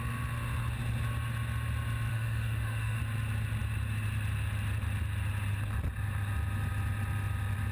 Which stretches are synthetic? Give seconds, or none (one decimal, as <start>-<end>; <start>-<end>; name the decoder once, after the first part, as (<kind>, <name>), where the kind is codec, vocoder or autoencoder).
2.1-3.0 (autoencoder, DAC-VAE)